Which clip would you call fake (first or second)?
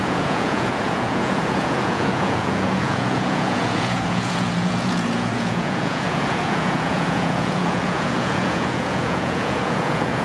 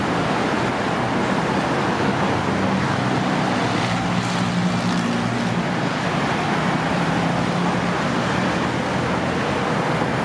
first